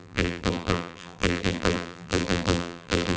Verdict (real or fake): fake